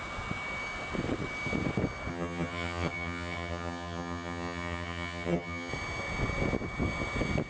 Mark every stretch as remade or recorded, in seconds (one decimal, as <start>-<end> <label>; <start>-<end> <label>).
0.0-2.1 recorded; 2.1-5.7 remade; 5.7-7.5 recorded